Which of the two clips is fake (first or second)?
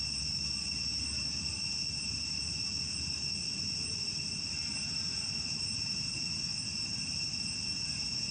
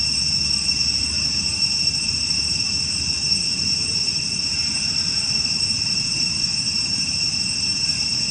second